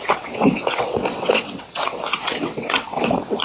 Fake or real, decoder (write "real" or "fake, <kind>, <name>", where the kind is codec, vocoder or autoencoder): fake, vocoder, WaveNeXt